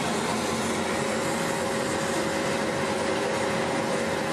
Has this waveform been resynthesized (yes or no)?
no